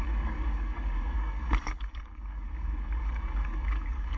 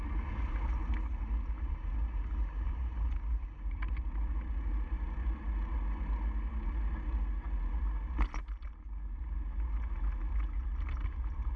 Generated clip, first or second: first